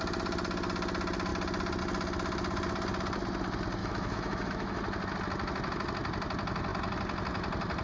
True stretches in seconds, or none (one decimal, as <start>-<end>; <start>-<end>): 0.0-3.8; 4.8-7.8